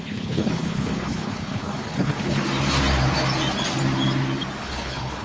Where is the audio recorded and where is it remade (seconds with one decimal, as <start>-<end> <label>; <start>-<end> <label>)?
0.0-2.4 remade; 2.4-4.6 recorded; 4.6-5.2 remade